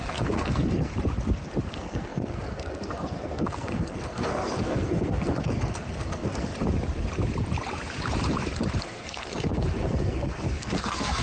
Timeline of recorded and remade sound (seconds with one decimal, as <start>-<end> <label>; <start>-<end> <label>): 0.0-0.9 remade; 0.9-1.7 recorded; 1.7-6.5 remade; 6.5-8.8 recorded; 8.8-11.2 remade

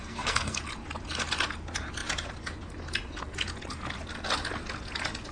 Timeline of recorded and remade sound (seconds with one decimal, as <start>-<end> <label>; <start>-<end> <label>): 0.0-0.6 remade; 0.6-5.3 recorded

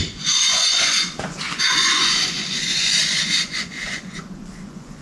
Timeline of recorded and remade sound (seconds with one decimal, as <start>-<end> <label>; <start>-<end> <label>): 0.0-5.0 remade